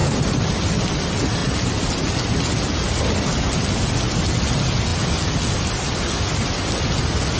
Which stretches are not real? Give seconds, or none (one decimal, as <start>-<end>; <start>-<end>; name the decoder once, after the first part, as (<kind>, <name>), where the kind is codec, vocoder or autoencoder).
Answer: 0.0-0.6 (vocoder, BigVGAN v2); 1.4-3.0